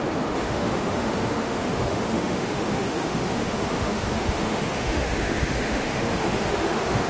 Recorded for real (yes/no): no